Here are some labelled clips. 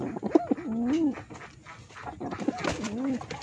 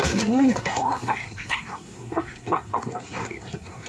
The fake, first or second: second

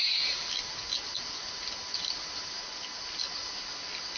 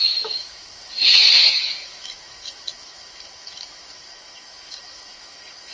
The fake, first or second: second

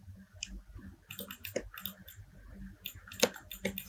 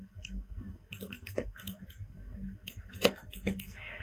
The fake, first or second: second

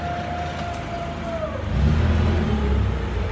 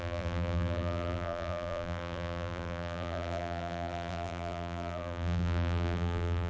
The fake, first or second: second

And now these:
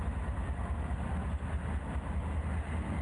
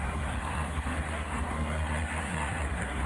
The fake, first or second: second